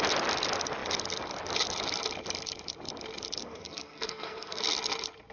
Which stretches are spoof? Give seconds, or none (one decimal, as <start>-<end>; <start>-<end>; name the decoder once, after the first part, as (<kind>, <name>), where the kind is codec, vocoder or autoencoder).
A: 3.4-4.6 (codec, SNAC)